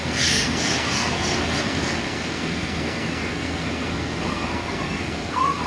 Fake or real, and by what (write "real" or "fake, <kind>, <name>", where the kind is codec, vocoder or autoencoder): fake, codec, SNAC